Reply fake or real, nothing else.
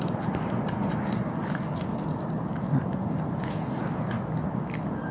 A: real